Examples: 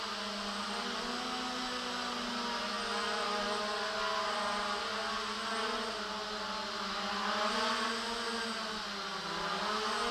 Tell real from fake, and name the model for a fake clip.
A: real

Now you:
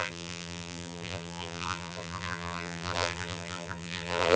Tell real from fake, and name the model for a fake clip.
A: fake, vocoder, BigVGAN v2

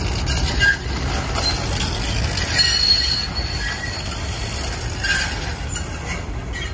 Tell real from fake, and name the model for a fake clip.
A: real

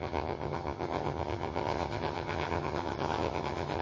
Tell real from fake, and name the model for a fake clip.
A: fake, vocoder, HiFi-GAN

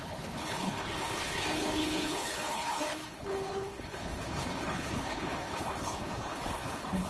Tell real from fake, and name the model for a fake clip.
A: fake, codec, HILCodec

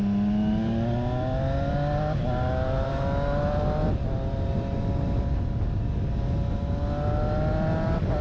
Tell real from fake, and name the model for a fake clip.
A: real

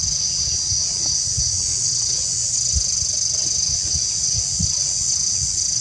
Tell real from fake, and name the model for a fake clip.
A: real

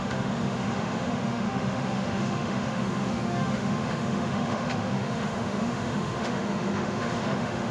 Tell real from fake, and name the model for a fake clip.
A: fake, autoencoder, DAC-VAE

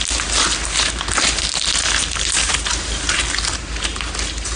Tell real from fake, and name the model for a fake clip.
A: real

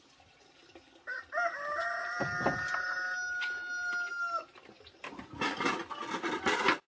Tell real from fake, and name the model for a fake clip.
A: real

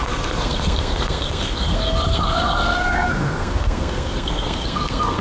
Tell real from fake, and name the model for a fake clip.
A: fake, codec, SNAC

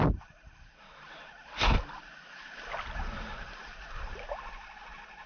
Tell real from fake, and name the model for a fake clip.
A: real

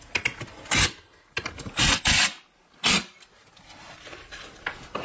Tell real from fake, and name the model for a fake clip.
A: real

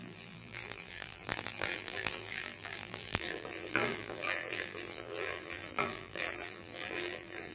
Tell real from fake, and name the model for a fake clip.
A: fake, vocoder, BigVGAN v2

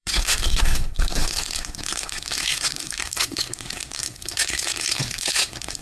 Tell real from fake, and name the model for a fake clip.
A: fake, codec, SNAC